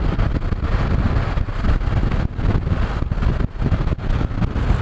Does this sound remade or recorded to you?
recorded